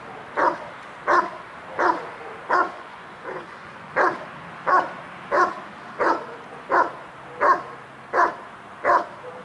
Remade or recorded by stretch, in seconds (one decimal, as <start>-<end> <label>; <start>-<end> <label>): 0.0-2.6 recorded; 2.6-3.9 remade; 3.9-9.4 recorded

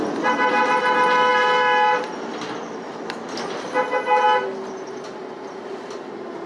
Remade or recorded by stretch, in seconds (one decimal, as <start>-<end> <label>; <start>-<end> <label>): 0.0-6.5 recorded

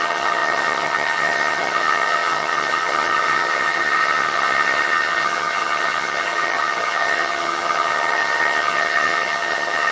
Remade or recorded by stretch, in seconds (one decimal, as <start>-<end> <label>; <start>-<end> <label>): 0.0-9.9 remade

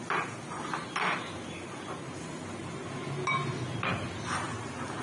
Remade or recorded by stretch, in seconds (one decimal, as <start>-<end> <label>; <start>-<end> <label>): 0.0-5.0 recorded

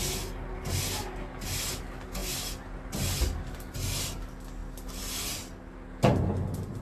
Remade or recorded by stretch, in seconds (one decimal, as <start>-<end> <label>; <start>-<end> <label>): 0.0-6.8 recorded

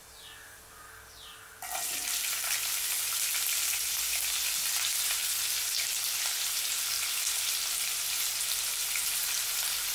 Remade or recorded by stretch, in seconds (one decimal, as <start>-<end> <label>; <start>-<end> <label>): 0.0-9.9 recorded

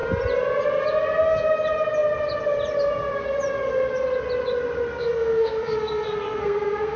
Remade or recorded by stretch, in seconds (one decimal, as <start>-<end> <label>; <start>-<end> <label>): 0.0-5.0 recorded; 5.0-7.0 remade

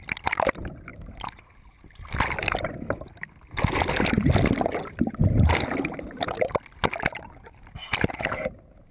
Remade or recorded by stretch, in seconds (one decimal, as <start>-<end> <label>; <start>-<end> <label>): 0.0-8.9 recorded